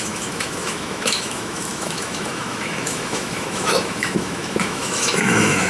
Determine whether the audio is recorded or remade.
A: remade